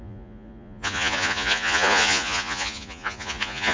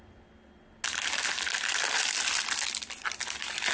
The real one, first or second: second